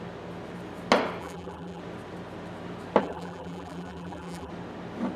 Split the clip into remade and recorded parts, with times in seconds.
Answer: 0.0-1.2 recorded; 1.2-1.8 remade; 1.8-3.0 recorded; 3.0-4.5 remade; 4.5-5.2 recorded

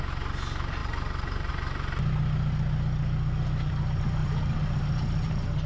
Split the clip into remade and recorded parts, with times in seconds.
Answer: 0.0-0.8 recorded; 0.8-1.5 remade; 1.5-4.2 recorded; 4.2-5.7 remade

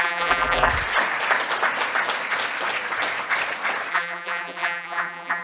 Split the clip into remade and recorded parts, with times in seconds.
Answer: 0.0-0.7 remade; 0.7-3.9 recorded; 3.9-5.4 remade

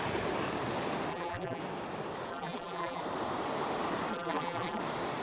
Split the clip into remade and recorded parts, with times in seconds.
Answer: 0.0-1.1 recorded; 1.1-1.6 remade; 1.6-2.3 recorded; 2.3-3.0 remade; 3.0-4.1 recorded; 4.1-4.8 remade; 4.8-5.2 recorded

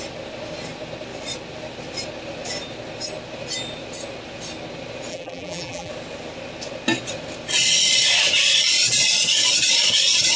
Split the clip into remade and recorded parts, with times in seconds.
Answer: 0.0-5.1 recorded; 5.1-5.9 remade; 5.9-10.4 recorded

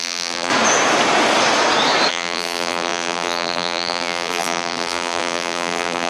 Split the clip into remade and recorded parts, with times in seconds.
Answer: 0.0-0.5 remade; 0.5-2.1 recorded; 2.1-6.1 remade

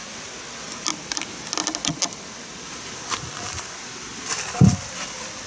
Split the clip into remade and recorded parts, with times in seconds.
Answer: 0.0-5.5 recorded